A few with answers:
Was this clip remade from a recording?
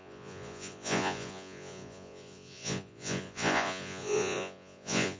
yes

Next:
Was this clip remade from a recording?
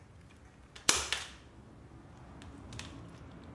no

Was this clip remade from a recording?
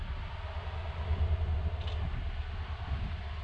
no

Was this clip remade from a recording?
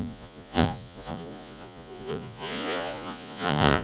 yes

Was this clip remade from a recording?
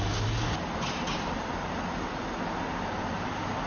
no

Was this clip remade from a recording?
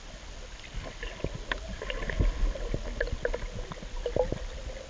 no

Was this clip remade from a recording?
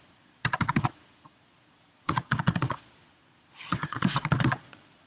yes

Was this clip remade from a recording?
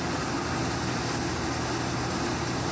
no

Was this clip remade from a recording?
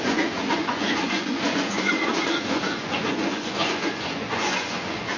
yes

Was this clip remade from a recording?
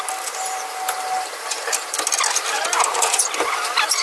no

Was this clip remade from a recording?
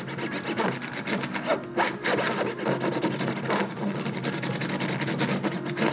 no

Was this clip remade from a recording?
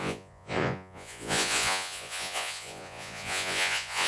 yes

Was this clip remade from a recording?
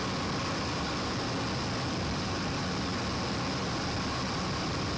no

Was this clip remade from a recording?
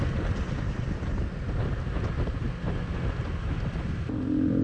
no